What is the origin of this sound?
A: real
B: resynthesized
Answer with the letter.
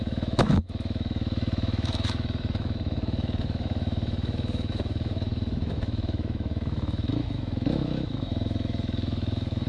B